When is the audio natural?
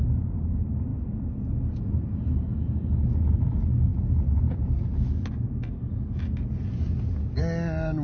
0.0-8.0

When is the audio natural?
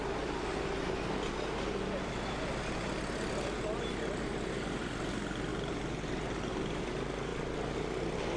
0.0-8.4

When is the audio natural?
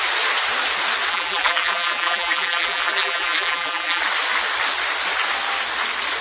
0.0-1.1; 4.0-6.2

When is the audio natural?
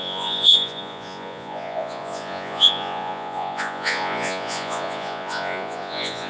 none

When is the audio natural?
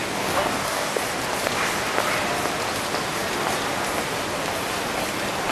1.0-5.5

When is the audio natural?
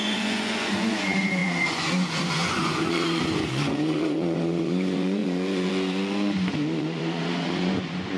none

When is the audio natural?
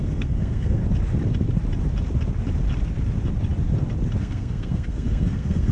0.8-4.2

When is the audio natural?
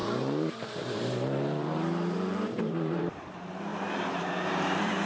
3.7-4.5